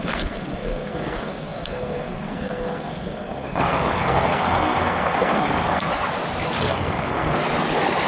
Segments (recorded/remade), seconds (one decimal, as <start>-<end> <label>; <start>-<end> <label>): 0.0-5.9 remade; 5.9-6.6 recorded; 6.6-7.4 remade; 7.4-8.1 recorded